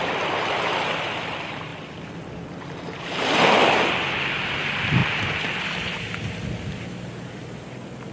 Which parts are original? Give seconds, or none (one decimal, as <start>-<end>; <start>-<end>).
0.0-8.1